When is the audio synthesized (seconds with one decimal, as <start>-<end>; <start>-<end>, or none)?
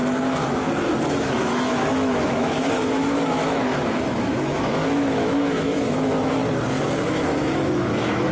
1.1-6.4; 7.1-8.3